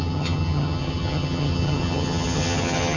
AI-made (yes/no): yes